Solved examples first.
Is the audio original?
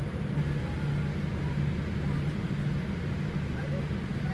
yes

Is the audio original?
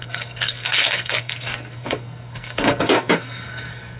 no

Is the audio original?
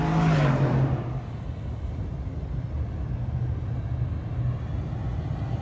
yes